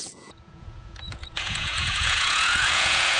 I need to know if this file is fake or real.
fake